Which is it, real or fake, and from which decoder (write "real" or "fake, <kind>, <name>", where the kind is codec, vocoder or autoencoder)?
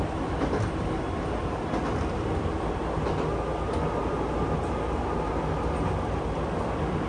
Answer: real